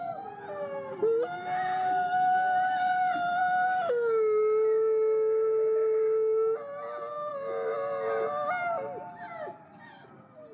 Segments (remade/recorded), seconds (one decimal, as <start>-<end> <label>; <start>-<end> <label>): 0.0-10.5 recorded